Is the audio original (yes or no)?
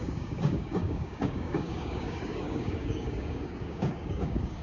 no